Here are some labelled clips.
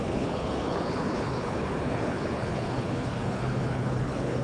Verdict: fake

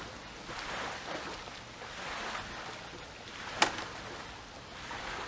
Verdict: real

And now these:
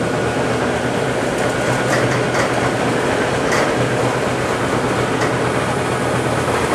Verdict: real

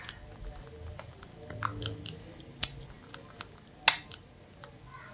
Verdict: real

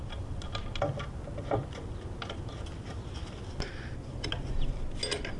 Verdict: real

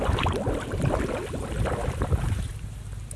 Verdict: real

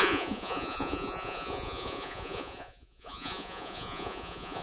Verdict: fake